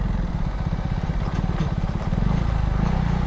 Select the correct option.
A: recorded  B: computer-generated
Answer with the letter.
A